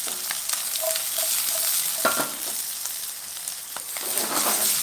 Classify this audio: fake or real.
real